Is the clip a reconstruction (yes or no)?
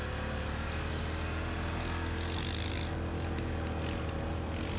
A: no